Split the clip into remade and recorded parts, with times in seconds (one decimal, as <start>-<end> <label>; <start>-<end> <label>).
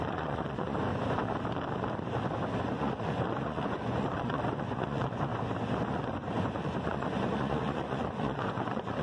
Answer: 0.0-0.9 remade; 0.9-2.6 recorded; 2.6-5.3 remade; 5.3-5.9 recorded; 5.9-9.0 remade